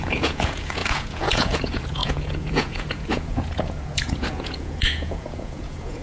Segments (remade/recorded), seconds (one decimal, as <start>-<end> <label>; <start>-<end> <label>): 0.0-6.0 remade